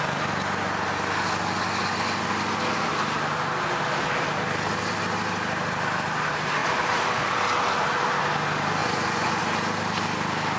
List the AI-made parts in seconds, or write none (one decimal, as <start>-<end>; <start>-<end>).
8.8-9.4